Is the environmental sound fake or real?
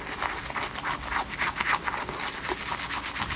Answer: real